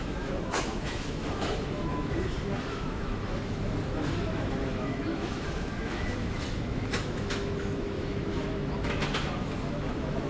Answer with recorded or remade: remade